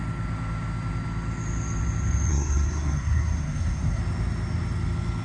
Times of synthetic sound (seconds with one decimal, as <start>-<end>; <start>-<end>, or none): 2.3-4.0